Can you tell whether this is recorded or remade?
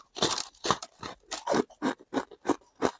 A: recorded